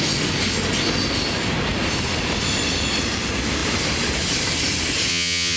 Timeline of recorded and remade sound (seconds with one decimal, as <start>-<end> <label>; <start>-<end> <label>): 0.0-5.1 recorded; 5.1-5.6 remade